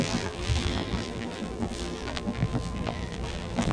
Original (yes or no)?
no